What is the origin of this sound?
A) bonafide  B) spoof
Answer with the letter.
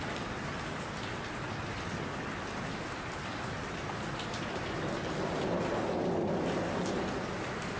A